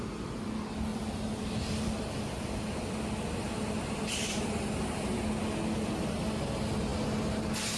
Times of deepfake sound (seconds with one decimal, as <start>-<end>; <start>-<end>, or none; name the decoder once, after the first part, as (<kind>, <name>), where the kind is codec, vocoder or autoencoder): 0.9-5.2 (vocoder, BigVGAN v2)